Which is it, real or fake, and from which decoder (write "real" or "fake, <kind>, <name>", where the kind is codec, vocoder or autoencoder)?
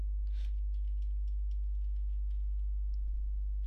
real